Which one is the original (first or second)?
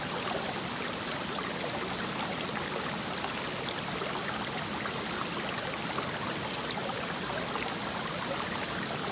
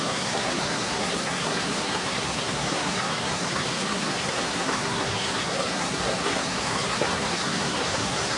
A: first